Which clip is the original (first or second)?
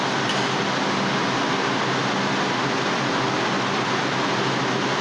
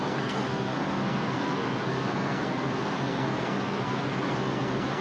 first